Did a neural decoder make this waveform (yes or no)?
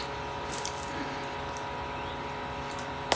no